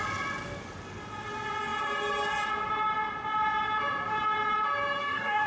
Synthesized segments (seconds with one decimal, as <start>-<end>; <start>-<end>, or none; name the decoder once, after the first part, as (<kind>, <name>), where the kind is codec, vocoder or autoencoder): 5.0-5.5 (codec, DAC)